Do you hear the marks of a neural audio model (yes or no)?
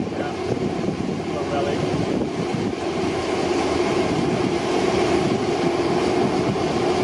no